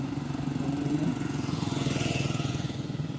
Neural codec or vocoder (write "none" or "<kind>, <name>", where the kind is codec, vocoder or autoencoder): vocoder, Vocos